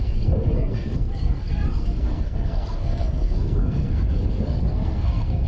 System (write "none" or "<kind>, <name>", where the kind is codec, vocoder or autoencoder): codec, SNAC